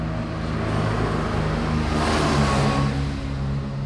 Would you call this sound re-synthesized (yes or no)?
no